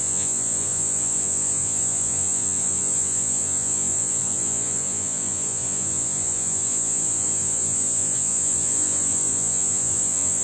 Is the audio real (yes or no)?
no